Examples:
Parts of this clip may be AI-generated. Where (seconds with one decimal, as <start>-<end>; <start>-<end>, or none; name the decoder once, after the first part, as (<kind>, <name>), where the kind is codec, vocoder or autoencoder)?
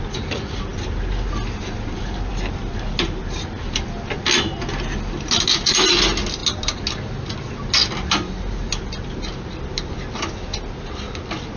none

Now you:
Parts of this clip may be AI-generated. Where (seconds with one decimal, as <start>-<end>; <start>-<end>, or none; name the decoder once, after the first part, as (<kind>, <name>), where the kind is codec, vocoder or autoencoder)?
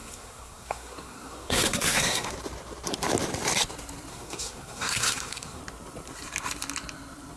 0.0-2.3 (codec, SNAC); 4.1-5.6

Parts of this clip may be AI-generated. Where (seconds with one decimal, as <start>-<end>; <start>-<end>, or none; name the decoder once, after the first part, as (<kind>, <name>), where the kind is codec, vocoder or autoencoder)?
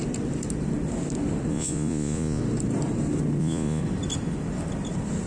1.5-2.4 (vocoder, Vocos); 3.4-3.8